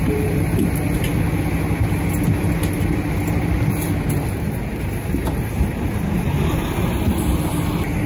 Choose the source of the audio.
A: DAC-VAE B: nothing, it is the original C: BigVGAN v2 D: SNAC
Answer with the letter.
B